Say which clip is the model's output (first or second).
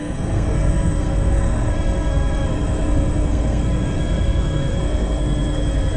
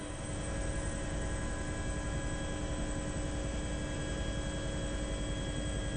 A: first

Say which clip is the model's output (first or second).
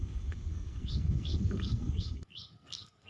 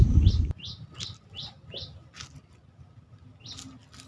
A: first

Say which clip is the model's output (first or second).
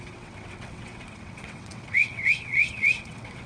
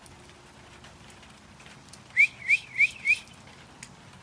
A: first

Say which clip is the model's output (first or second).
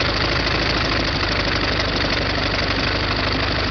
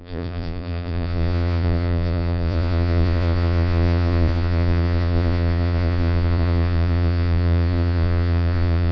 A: second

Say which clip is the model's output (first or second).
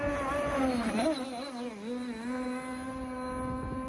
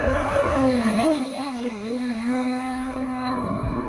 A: second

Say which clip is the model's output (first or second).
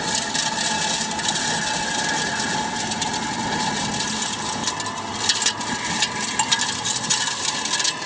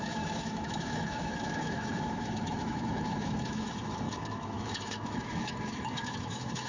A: second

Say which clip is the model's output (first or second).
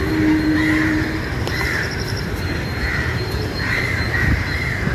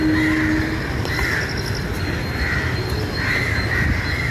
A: first